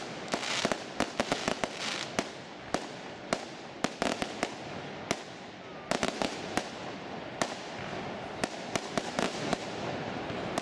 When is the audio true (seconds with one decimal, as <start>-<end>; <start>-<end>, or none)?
0.0-5.7; 6.8-9.5; 10.2-10.6